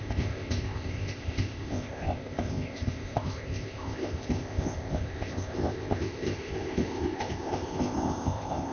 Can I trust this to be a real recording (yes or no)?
no